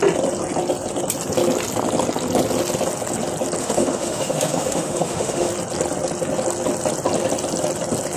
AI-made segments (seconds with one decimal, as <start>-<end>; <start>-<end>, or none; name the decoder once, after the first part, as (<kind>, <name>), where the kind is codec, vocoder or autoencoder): 3.6-5.5 (autoencoder, DAC-VAE)